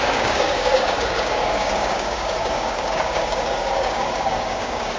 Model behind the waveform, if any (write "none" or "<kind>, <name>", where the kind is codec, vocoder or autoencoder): codec, DAC